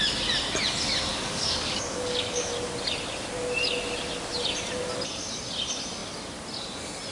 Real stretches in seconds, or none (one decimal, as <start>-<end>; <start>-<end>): 0.0-1.1; 2.5-7.1